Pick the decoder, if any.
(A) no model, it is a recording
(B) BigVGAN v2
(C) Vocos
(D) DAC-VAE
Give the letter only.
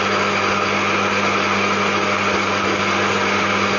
A